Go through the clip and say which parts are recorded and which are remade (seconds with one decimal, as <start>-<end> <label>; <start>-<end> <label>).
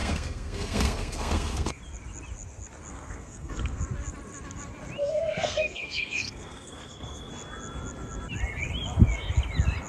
0.0-1.8 remade; 1.8-2.9 recorded; 2.9-3.8 remade; 3.8-5.0 recorded; 5.0-7.3 remade; 7.3-9.9 recorded